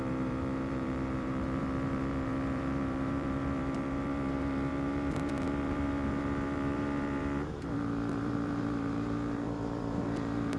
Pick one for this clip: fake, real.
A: fake